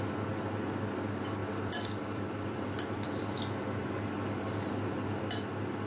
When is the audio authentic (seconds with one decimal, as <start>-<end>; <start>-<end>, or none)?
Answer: 0.0-1.4; 3.4-5.9

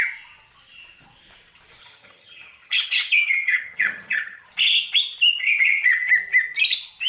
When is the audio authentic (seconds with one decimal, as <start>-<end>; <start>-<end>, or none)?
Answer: 0.0-1.8; 4.5-5.4; 6.1-7.1

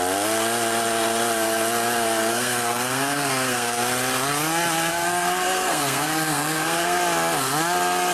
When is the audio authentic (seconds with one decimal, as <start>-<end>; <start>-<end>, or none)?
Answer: 0.0-2.3; 3.8-4.9; 7.0-8.1

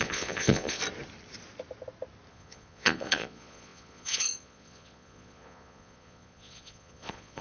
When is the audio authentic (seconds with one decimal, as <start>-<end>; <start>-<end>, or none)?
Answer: 0.8-2.3

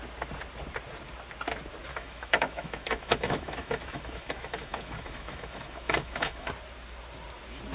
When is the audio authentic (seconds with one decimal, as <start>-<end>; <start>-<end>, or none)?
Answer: 0.0-1.9; 6.5-7.7

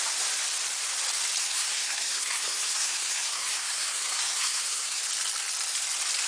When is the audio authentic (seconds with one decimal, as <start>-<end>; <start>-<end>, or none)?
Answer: 0.0-1.4; 5.0-6.3

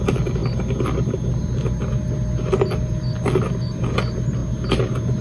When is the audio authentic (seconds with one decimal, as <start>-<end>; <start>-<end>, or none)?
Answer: 0.0-5.2